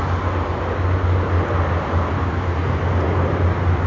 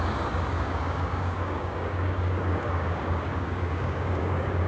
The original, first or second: first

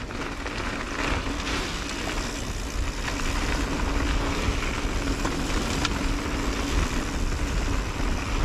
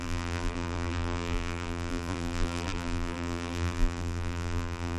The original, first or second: first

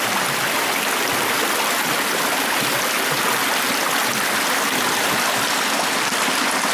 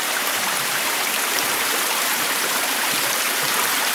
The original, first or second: first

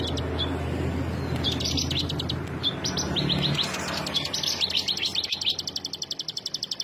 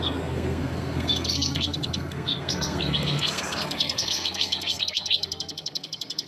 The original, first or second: first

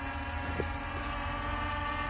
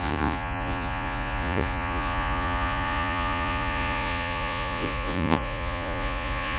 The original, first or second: first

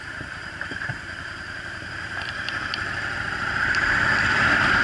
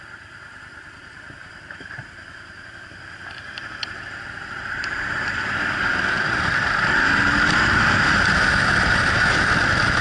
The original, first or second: second